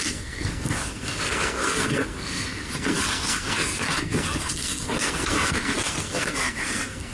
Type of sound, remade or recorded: remade